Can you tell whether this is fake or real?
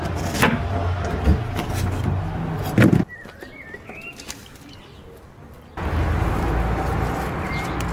real